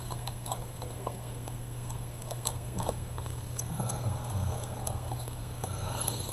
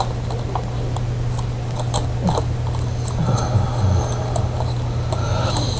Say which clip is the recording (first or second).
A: second